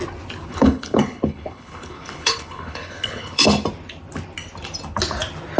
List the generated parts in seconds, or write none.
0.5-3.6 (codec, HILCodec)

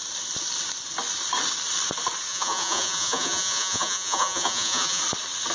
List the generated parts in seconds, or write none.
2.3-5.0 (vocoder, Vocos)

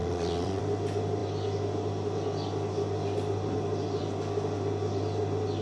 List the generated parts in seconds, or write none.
0.0-0.6 (vocoder, Vocos)

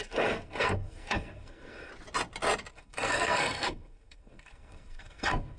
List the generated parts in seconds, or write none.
0.0-1.9 (codec, SNAC); 2.7-5.6

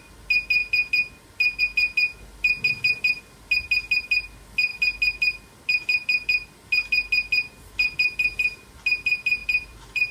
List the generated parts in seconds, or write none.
9.4-10.1 (vocoder, BigVGAN v2)

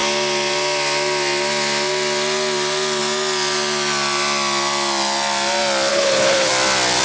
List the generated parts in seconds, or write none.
5.9-6.5 (codec, HILCodec)

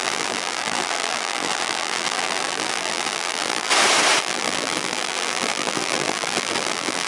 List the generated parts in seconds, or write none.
0.0-3.7 (vocoder, BigVGAN v2); 4.2-7.1

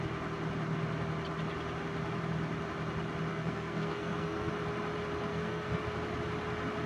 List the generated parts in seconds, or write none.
3.3-4.5 (codec, SNAC); 5.3-5.8